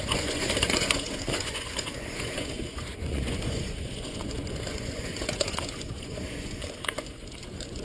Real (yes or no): no